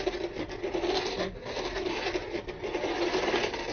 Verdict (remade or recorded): recorded